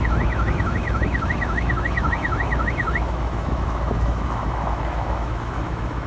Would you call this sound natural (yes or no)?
no